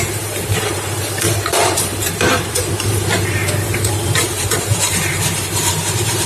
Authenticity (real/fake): fake